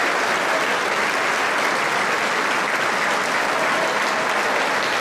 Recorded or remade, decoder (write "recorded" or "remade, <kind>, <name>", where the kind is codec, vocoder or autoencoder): recorded